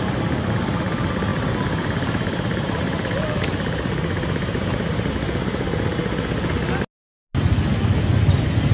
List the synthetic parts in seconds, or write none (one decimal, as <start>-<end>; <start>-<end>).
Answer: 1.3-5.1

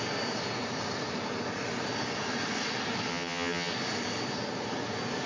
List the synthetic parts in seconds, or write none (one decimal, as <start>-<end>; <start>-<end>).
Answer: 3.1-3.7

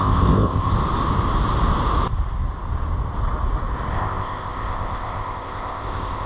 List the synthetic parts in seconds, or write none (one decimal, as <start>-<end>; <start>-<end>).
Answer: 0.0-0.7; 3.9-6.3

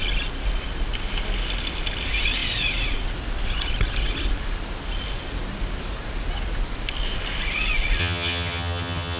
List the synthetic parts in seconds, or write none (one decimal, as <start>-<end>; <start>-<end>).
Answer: 8.0-9.2

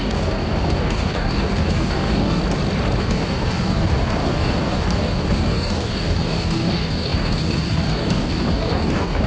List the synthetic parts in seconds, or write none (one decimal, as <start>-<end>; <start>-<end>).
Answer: 0.0-2.4; 3.0-9.3

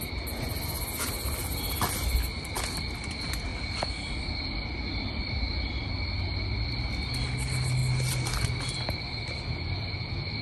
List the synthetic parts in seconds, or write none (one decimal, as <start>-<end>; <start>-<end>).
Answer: none

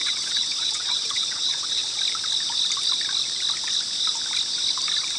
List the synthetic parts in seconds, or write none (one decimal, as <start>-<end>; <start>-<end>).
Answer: 0.0-1.8